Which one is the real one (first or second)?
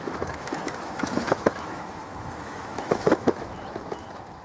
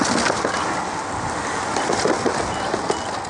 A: second